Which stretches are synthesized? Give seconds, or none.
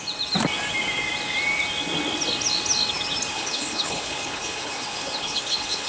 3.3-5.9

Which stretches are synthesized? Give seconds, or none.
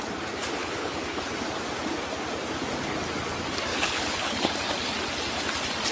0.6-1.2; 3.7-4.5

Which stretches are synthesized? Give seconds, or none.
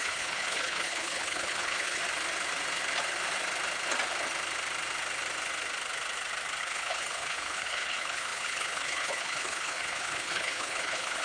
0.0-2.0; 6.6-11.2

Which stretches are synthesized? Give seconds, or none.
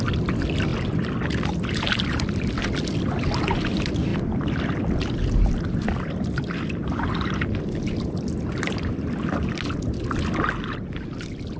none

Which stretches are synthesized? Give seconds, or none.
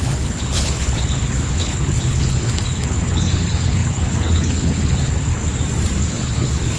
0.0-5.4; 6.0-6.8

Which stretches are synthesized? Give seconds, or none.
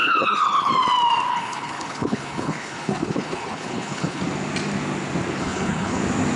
0.0-0.7; 1.3-4.2; 5.4-6.0